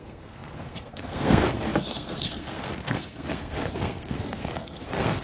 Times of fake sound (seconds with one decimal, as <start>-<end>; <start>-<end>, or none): 0.0-5.2